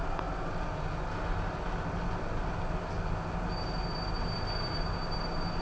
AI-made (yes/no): no